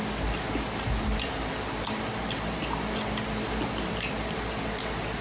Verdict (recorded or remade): recorded